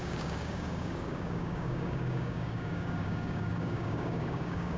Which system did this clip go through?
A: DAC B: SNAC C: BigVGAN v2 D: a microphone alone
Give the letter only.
A